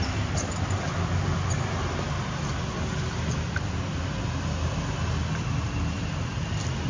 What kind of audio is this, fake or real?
real